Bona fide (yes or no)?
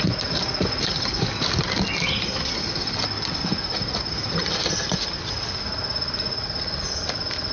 yes